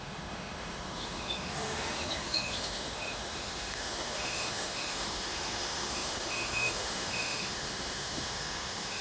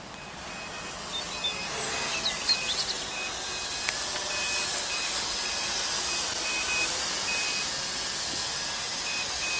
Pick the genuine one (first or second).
second